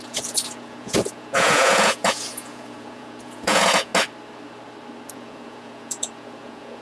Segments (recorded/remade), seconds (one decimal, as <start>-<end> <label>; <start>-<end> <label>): 0.0-3.9 remade; 3.9-5.1 recorded; 5.1-6.8 remade